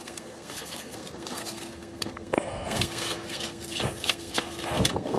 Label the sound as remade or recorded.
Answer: remade